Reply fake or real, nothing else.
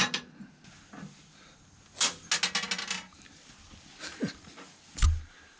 real